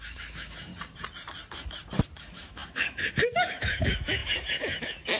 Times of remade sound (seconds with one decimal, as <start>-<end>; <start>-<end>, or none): 0.0-0.7; 2.2-5.2